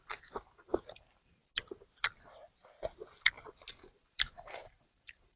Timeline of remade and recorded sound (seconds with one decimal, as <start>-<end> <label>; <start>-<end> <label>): 0.0-1.4 remade; 1.4-3.7 recorded; 3.7-5.4 remade